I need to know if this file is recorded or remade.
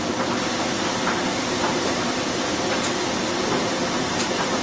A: recorded